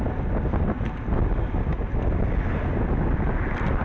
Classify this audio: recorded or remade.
recorded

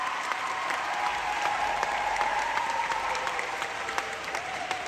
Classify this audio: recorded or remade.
remade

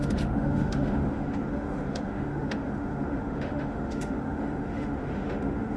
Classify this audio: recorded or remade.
remade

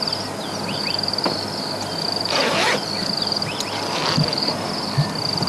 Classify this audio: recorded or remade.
remade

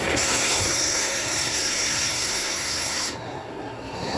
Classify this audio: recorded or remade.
remade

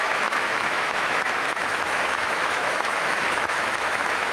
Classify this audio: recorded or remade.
remade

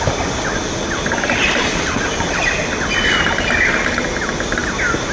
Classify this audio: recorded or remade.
recorded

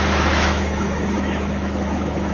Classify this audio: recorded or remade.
remade